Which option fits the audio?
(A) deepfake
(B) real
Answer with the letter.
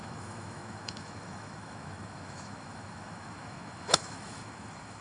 A